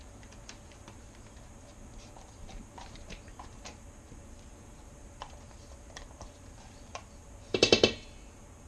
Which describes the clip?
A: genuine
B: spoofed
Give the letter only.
B